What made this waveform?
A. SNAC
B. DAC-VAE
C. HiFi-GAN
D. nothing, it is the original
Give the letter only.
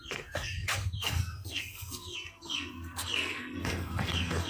A